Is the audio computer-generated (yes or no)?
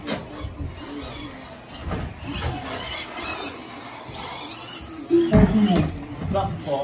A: no